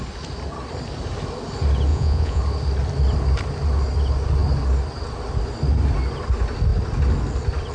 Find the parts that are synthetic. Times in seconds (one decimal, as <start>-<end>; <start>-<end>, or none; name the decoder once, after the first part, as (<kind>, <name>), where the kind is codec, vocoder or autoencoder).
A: 1.9-2.4 (vocoder, Vocos)